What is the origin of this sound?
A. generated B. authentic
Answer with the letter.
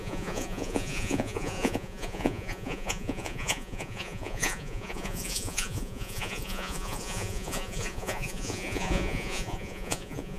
A